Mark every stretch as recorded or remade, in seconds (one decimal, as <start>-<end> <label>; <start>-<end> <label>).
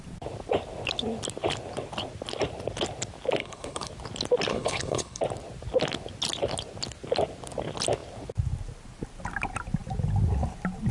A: 0.0-3.4 recorded; 3.4-3.9 remade; 3.9-4.5 recorded; 4.5-5.2 remade; 5.2-10.9 recorded